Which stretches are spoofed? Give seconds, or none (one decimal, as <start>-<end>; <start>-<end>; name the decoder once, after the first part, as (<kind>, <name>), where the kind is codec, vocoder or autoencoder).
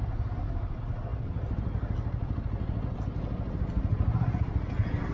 none